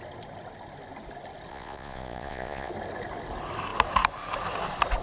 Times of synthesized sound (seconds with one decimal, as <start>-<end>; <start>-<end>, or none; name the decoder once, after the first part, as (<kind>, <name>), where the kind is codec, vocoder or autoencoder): 1.5-2.7 (vocoder, Vocos)